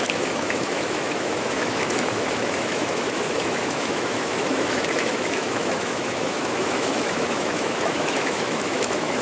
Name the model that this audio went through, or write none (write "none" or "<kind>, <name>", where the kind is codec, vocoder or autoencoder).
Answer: autoencoder, DAC-VAE